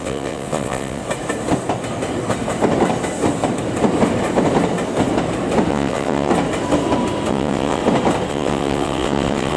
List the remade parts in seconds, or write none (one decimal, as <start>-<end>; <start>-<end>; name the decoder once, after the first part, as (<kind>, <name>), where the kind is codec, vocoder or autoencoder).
0.0-1.0 (vocoder, WaveNeXt); 5.7-6.3; 7.3-7.8; 8.3-9.6